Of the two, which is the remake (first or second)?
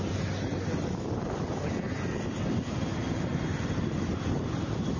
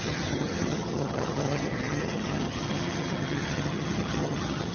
second